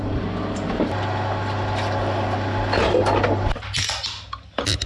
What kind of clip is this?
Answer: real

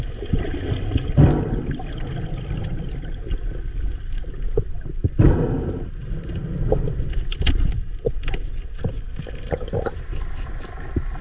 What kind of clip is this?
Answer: real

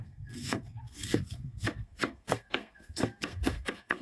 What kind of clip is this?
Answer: fake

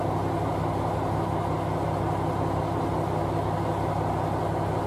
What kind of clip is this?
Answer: real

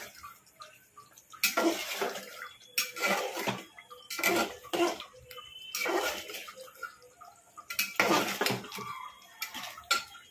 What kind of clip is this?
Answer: real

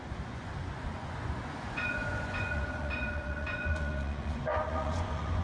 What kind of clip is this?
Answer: fake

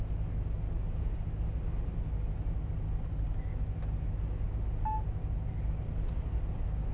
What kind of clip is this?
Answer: real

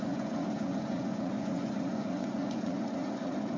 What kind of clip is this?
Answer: fake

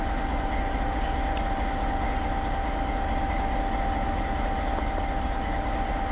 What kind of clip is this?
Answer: real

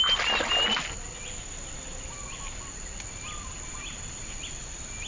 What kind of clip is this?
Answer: real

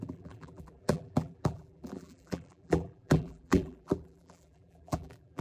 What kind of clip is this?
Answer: fake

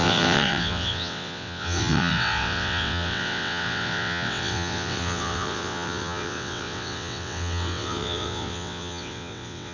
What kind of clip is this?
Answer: fake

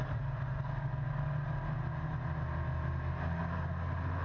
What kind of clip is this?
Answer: real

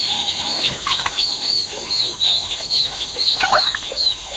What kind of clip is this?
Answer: fake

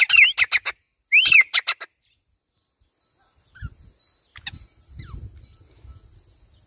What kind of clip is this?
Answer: real